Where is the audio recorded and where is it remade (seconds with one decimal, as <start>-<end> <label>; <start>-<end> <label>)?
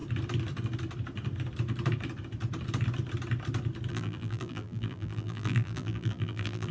0.0-3.9 recorded; 3.9-6.7 remade